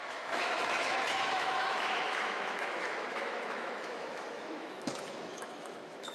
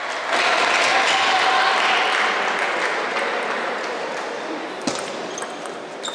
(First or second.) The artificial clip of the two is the first